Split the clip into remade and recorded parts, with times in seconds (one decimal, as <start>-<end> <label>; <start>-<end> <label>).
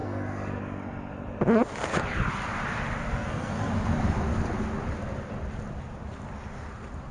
0.0-0.6 remade; 0.6-3.1 recorded; 3.1-3.7 remade; 3.7-7.1 recorded